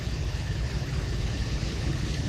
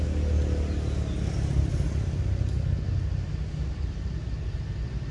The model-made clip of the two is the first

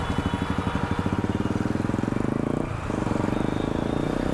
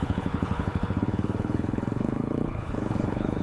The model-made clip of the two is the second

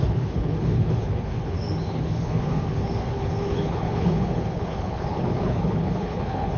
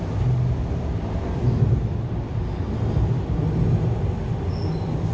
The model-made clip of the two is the first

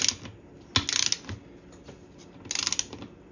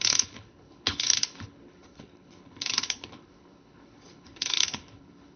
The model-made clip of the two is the second